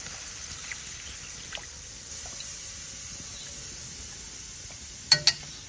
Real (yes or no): yes